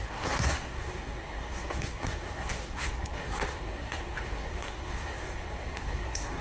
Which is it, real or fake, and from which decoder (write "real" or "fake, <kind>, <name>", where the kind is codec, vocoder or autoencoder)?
fake, codec, SNAC